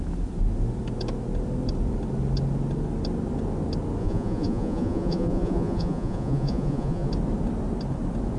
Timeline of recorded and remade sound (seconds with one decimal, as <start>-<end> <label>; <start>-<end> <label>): 0.0-4.0 recorded; 4.0-7.1 remade; 7.1-8.4 recorded